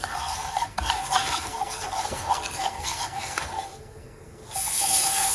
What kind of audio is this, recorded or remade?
remade